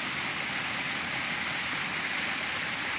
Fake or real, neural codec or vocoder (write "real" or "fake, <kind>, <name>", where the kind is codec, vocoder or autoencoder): real